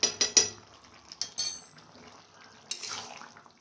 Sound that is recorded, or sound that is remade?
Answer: recorded